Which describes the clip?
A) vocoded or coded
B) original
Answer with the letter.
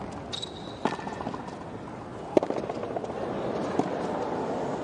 B